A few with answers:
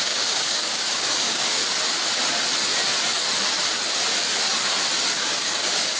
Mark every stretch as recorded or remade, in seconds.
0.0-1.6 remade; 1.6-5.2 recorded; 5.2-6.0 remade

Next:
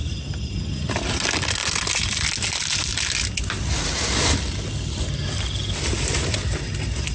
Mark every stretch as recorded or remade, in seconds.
0.0-7.1 recorded

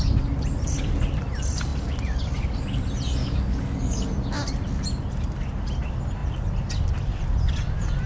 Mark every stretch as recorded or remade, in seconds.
0.0-3.2 recorded; 3.2-4.0 remade; 4.0-8.1 recorded

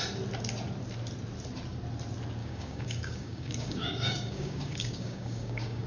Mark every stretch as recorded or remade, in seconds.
0.0-2.4 recorded; 2.4-5.9 remade

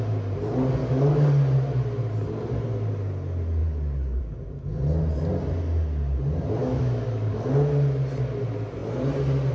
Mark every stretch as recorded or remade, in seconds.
0.0-0.8 recorded; 0.8-1.3 remade; 1.3-3.6 recorded; 3.6-4.2 remade; 4.2-6.6 recorded; 6.6-7.4 remade; 7.4-9.5 recorded

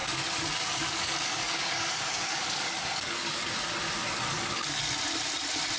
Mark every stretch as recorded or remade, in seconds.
0.0-3.5 remade; 3.5-4.0 recorded; 4.0-4.8 remade; 4.8-5.8 recorded

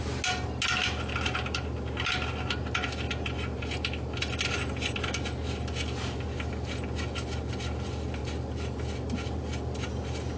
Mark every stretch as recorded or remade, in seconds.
0.0-10.4 recorded

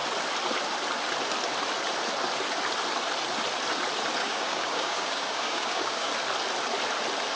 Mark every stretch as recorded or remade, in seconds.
0.0-4.2 recorded; 4.2-6.1 remade; 6.1-7.4 recorded